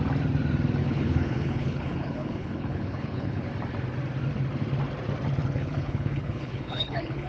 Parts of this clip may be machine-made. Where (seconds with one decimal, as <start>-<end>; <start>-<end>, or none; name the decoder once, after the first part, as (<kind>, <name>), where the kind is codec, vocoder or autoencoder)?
0.8-3.5 (codec, HILCodec); 5.4-7.3